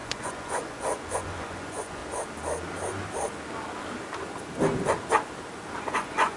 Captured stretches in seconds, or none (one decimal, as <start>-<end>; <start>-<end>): 2.0-5.8